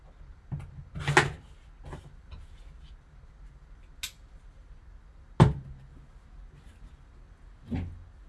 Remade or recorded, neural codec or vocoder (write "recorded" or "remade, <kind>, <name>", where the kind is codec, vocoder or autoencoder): recorded